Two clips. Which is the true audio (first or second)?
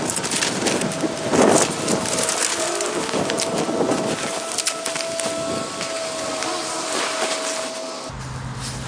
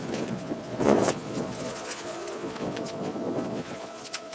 first